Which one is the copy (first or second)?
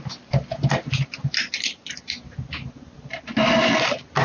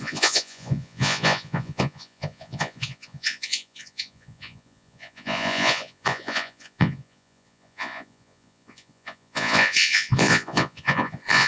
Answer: second